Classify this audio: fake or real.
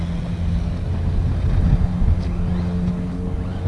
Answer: real